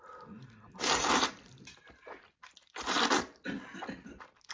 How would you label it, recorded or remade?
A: recorded